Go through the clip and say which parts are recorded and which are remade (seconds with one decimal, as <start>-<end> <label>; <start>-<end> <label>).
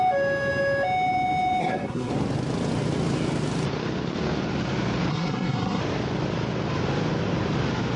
0.0-1.6 recorded; 1.6-2.1 remade; 2.1-5.1 recorded; 5.1-5.8 remade; 5.8-8.0 recorded